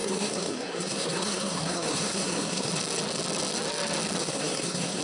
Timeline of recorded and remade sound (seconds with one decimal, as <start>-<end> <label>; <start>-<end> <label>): 0.0-2.7 remade; 2.7-4.2 recorded; 4.2-5.0 remade